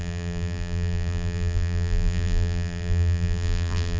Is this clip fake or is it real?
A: fake